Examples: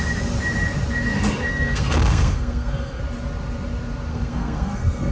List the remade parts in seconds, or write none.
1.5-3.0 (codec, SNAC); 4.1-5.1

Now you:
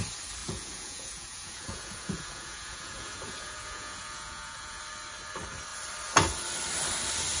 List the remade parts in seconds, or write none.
0.4-4.8 (vocoder, Vocos)

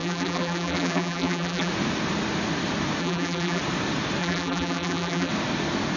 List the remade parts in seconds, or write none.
0.0-1.7 (vocoder, BigVGAN v2); 3.0-3.6; 4.2-5.3